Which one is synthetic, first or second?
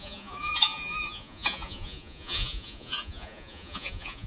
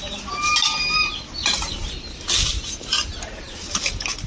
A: first